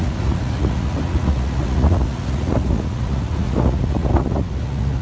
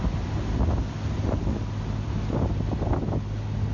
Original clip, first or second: second